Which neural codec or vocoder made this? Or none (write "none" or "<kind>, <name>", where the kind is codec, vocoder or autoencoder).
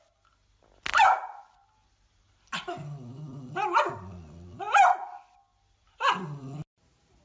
none